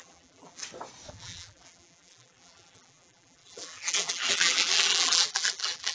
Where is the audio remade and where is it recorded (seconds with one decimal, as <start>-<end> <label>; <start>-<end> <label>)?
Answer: 0.0-0.6 remade; 0.6-1.1 recorded; 1.1-5.9 remade